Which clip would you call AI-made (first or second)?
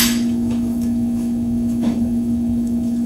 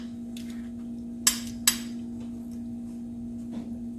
first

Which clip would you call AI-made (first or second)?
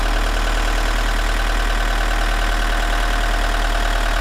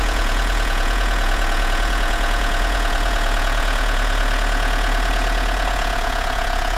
second